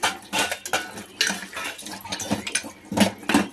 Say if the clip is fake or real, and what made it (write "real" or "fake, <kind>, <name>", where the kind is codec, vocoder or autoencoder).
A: real